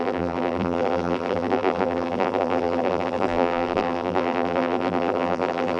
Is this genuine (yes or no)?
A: no